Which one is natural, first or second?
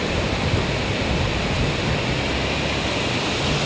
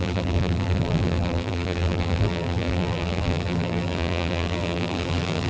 first